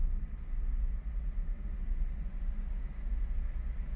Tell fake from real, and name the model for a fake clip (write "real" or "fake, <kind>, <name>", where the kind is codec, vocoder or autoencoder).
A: real